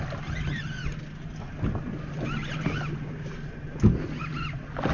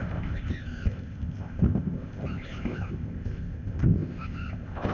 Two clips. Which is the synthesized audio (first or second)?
second